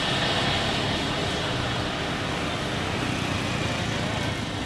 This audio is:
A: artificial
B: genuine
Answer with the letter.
B